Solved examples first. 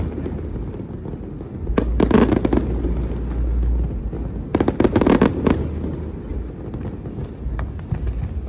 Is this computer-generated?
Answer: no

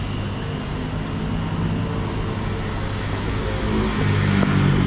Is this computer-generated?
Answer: no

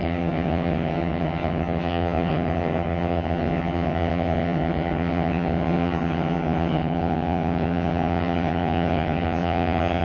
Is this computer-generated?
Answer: yes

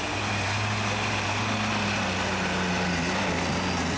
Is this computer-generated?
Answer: no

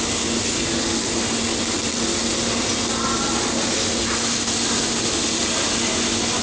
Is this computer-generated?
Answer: no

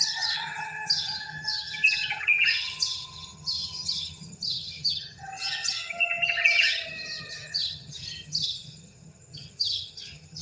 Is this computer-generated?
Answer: yes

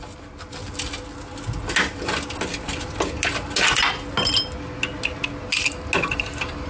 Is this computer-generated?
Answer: no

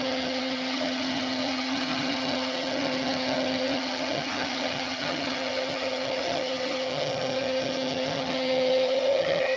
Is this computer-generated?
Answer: yes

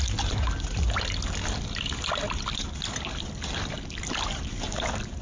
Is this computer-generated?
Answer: no